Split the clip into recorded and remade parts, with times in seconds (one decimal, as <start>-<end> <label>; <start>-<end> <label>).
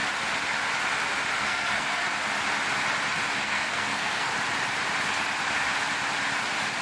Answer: 0.0-1.4 recorded; 1.4-2.0 remade; 2.0-3.4 recorded; 3.4-4.3 remade; 4.3-6.8 recorded